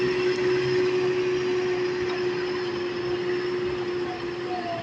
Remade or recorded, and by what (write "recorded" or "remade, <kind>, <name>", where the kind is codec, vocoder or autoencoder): recorded